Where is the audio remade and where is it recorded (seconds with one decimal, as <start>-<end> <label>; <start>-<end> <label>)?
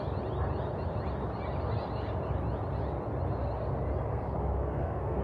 0.0-4.1 recorded; 4.1-5.2 remade